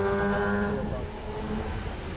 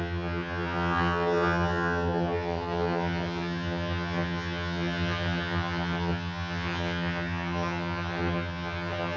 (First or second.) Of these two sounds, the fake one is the second